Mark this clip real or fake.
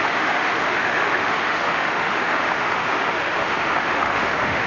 fake